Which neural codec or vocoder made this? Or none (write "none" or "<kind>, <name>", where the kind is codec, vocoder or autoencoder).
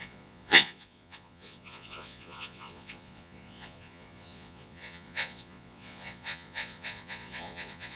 vocoder, Vocos